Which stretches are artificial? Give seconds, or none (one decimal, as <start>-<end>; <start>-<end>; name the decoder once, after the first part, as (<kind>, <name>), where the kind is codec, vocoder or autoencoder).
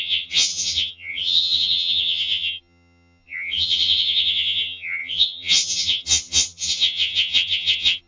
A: 0.0-8.1 (vocoder, HiFi-GAN)